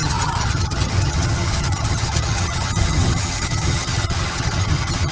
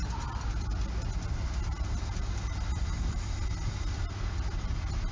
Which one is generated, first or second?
first